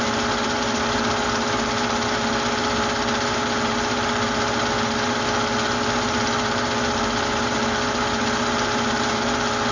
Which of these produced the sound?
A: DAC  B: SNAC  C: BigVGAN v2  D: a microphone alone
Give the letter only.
D